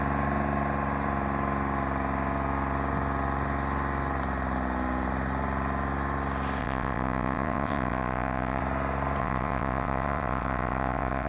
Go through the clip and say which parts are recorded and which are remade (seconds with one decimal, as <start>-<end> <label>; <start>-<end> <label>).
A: 0.0-6.6 recorded; 6.6-8.6 remade; 8.6-9.2 recorded; 9.2-11.3 remade